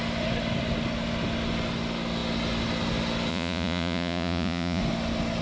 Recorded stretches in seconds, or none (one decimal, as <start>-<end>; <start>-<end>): 0.0-3.3; 4.8-5.4